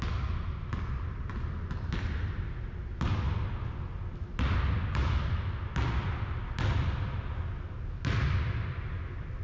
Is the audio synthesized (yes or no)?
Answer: no